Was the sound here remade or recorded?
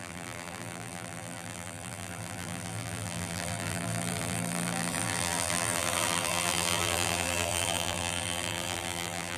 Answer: remade